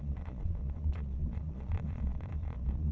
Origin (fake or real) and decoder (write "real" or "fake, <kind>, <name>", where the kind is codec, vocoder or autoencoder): fake, vocoder, Vocos